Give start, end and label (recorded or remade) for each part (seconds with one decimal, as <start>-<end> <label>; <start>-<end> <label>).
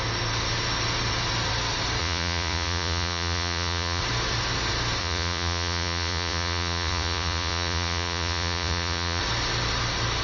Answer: 0.0-2.0 recorded; 2.0-4.0 remade; 4.0-5.0 recorded; 5.0-9.2 remade; 9.2-10.2 recorded